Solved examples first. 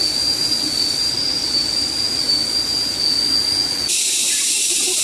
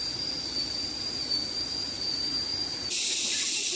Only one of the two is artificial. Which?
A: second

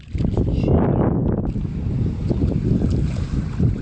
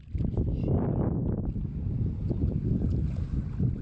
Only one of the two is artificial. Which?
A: second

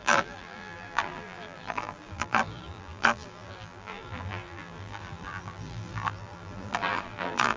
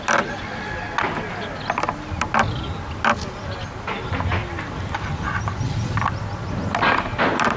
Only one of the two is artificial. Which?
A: first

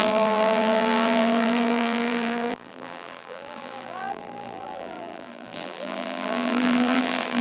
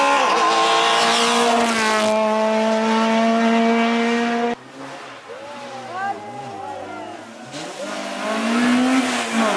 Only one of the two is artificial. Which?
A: first